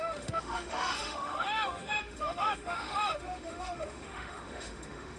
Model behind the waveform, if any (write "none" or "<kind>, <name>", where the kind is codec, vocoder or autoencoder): autoencoder, DAC-VAE